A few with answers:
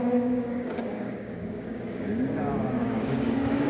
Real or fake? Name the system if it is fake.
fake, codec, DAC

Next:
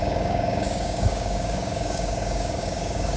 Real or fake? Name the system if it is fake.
fake, codec, DAC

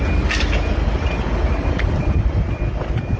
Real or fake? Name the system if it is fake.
real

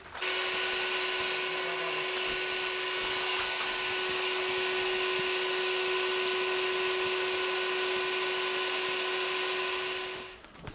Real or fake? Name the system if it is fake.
real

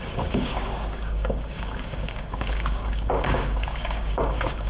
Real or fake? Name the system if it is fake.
fake, codec, DAC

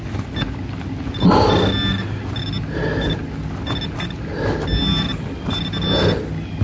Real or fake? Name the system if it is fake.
real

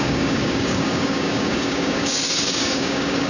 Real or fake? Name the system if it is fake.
fake, codec, DAC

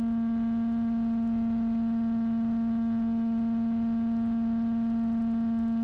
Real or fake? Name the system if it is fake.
real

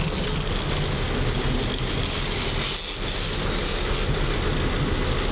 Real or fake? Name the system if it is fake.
real